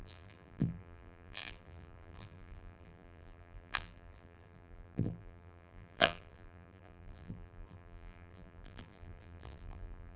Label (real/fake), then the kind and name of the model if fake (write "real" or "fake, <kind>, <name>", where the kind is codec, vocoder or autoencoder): fake, vocoder, BigVGAN v2